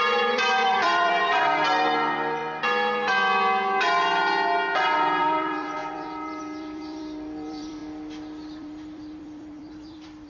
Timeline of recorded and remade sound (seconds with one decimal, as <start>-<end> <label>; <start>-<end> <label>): 0.0-2.4 remade; 2.4-5.2 recorded; 5.2-7.8 remade; 7.8-8.6 recorded; 8.6-10.3 remade